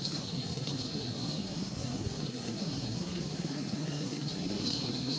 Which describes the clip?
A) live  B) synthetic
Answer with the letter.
B